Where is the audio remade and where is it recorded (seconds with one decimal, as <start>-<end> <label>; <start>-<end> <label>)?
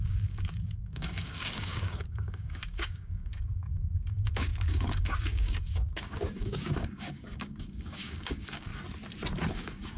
0.0-8.7 remade; 8.7-9.5 recorded; 9.5-10.0 remade